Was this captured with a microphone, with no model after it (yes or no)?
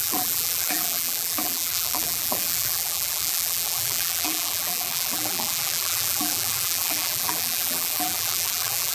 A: no